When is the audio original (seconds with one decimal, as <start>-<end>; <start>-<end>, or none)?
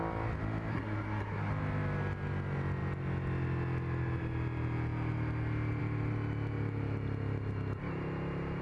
0.0-0.7; 1.5-8.6